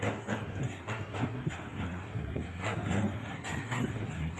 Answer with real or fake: fake